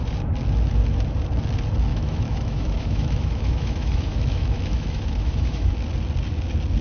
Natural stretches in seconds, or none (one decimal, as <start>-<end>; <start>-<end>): 0.0-1.9; 5.7-6.8